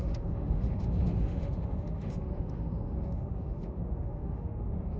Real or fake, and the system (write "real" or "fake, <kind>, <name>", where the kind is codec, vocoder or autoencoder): fake, autoencoder, DAC-VAE